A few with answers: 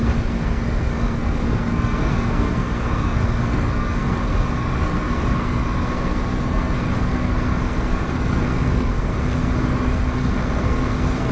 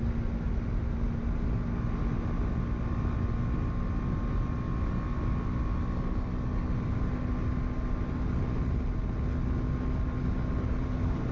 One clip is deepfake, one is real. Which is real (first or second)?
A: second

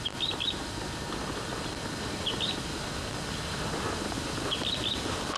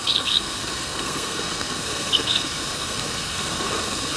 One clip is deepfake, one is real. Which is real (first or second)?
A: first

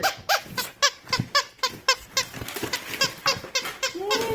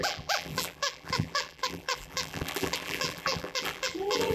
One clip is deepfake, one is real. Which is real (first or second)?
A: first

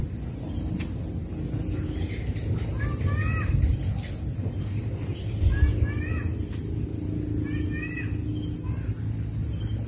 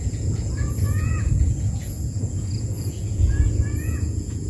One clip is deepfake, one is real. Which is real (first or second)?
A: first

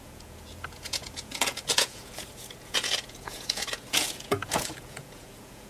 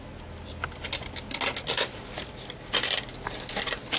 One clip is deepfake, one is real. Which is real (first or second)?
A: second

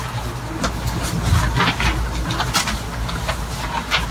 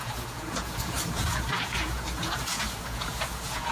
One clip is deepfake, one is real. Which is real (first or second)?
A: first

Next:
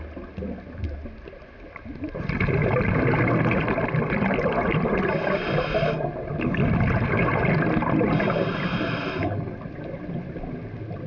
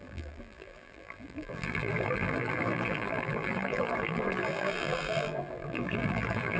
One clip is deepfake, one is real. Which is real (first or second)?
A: first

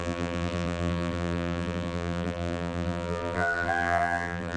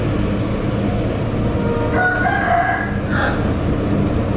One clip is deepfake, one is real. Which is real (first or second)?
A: second